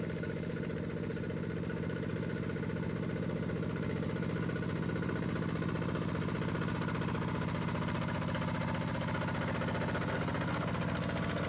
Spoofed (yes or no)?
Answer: no